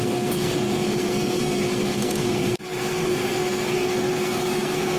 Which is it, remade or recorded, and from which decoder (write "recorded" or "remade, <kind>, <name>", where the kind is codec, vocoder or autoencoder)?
remade, codec, SNAC